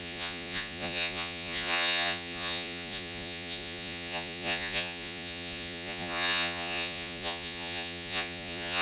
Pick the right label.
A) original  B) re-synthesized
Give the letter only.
B